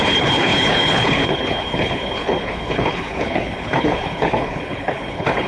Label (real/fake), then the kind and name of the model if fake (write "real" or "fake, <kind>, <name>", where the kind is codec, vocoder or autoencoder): fake, codec, HILCodec